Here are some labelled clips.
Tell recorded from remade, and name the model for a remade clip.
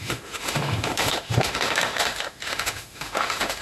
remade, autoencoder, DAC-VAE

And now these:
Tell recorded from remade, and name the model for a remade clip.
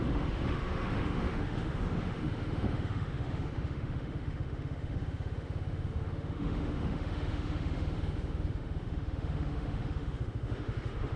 remade, autoencoder, DAC-VAE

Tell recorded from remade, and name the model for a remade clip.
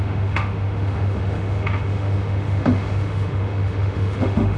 remade, autoencoder, DAC-VAE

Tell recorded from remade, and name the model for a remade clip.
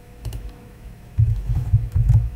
remade, autoencoder, DAC-VAE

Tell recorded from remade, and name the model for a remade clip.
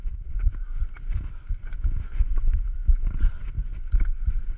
recorded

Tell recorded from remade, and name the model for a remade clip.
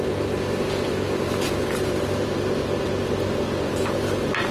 recorded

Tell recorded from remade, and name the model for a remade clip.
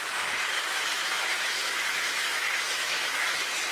remade, autoencoder, DAC-VAE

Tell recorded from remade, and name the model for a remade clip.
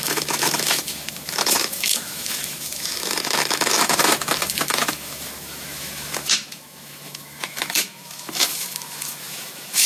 remade, autoencoder, DAC-VAE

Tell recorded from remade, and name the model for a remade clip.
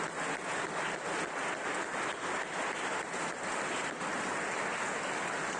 recorded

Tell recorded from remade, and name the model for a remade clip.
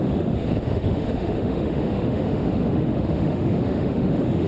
remade, autoencoder, DAC-VAE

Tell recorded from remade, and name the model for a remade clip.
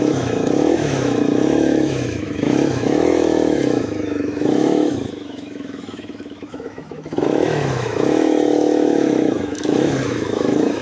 remade, autoencoder, DAC-VAE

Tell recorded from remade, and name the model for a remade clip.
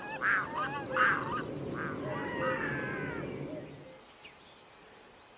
recorded